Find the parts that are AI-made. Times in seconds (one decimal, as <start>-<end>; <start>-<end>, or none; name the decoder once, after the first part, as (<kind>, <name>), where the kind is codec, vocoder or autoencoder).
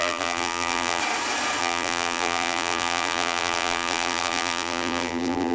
0.0-1.0 (vocoder, BigVGAN v2); 1.6-5.5